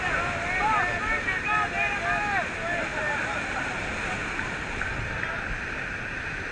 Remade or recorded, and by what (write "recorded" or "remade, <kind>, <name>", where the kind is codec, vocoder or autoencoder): recorded